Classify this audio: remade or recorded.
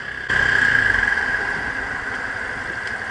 recorded